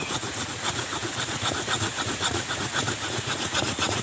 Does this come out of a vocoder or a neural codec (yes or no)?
yes